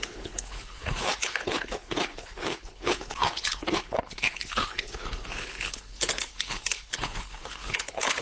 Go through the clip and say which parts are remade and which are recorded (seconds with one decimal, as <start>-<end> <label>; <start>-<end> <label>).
0.0-8.2 remade